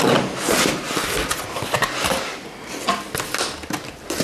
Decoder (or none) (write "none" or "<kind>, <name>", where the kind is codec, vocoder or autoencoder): none